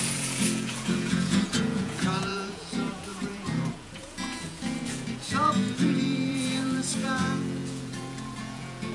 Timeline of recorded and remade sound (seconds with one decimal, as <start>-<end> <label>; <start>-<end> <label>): 0.0-8.9 remade